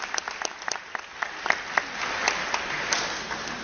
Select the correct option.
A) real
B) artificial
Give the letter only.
A